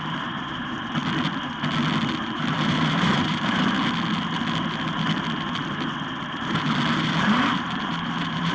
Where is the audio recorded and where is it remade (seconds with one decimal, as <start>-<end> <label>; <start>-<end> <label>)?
0.0-1.0 remade; 1.0-2.2 recorded; 2.2-3.8 remade; 3.8-6.3 recorded; 6.3-8.5 remade